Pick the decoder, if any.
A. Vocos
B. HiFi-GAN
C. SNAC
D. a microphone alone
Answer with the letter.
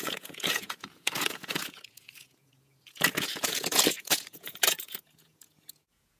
A